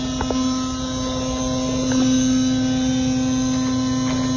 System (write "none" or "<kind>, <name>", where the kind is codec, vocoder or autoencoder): none